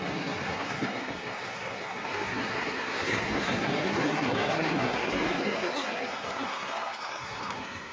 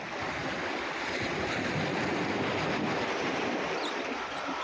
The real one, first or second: second